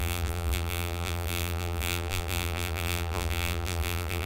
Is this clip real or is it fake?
fake